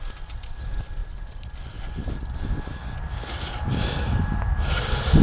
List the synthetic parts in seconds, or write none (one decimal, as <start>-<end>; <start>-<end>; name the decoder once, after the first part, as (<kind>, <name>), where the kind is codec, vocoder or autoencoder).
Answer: none